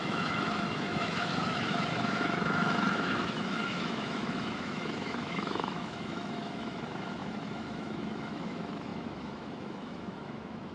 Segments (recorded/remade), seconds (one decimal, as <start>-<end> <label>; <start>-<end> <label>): 0.0-10.7 remade